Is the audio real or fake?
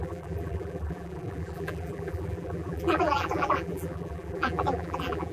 fake